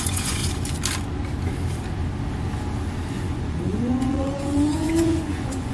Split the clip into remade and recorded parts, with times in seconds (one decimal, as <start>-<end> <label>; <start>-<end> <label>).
0.0-0.4 remade; 0.4-3.1 recorded; 3.1-5.7 remade